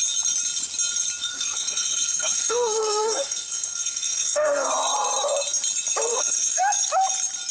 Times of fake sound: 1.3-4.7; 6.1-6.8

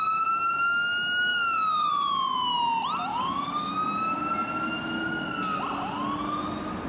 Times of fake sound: 1.3-1.9; 3.1-3.7

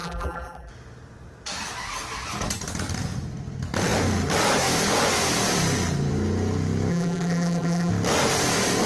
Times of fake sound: 0.0-0.7; 6.9-7.9

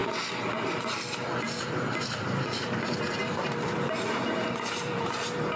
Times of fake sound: 2.0-5.6

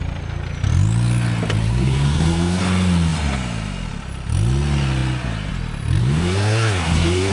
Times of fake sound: 1.6-2.6; 6.0-7.3